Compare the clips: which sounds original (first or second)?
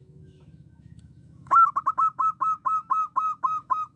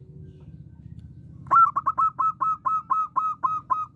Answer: second